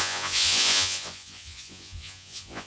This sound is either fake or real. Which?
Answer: fake